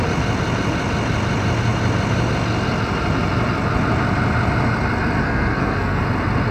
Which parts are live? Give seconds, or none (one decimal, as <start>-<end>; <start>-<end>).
0.0-5.2; 6.0-6.5